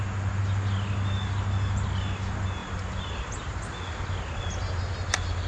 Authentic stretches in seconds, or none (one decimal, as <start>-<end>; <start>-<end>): 0.0-5.5

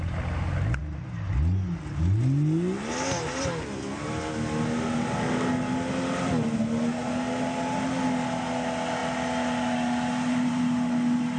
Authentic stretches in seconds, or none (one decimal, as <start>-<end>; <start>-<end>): 0.0-11.4

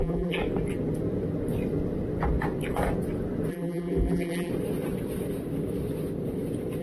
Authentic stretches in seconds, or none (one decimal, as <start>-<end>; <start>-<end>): 0.4-3.5; 4.5-6.8

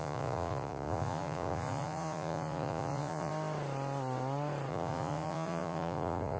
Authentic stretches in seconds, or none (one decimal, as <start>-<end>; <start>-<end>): 3.3-4.7

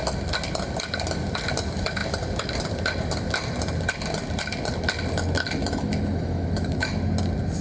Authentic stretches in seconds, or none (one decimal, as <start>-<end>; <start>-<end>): 0.0-5.6; 6.9-7.6

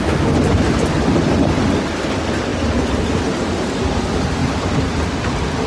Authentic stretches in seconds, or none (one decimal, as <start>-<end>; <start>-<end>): 0.0-5.7

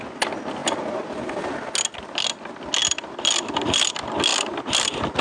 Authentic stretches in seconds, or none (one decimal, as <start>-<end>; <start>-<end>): 0.0-2.8; 3.9-4.3